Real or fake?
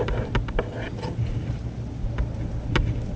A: real